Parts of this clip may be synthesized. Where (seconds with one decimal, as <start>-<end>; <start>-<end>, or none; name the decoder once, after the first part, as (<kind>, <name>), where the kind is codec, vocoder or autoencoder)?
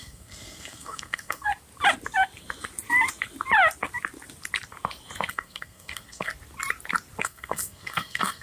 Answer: 0.0-1.5 (codec, SNAC); 5.3-6.3; 7.2-8.4